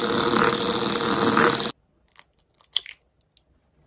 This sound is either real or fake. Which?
real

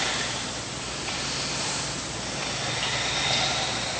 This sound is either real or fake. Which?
real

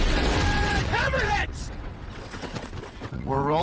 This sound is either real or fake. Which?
fake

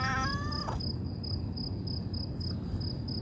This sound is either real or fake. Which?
real